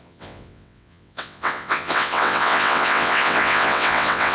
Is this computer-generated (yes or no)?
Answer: yes